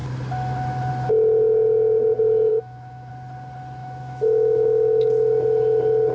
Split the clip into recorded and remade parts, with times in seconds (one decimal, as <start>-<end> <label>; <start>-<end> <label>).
0.0-2.5 recorded; 2.5-3.1 remade; 3.1-3.8 recorded; 3.8-5.0 remade; 5.0-6.1 recorded